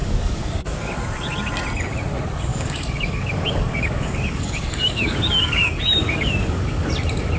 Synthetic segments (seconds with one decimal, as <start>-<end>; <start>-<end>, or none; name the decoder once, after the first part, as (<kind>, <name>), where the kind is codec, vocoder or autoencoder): 0.0-1.0 (codec, DAC); 2.5-6.9